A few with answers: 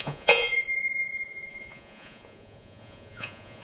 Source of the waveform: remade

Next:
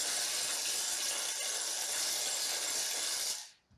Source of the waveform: recorded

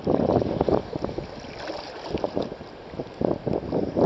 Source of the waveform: recorded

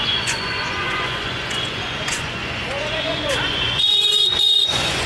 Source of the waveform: remade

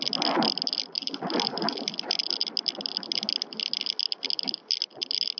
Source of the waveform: recorded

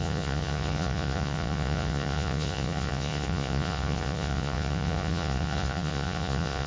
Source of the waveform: remade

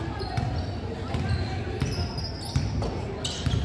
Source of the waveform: recorded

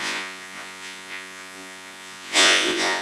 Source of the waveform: remade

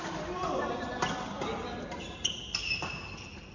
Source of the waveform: recorded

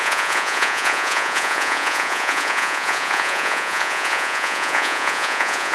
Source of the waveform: remade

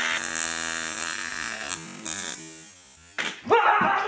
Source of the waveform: recorded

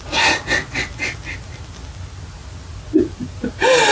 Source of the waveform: recorded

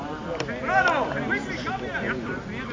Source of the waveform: recorded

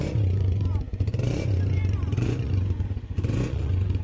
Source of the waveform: remade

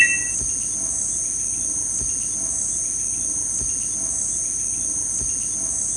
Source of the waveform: recorded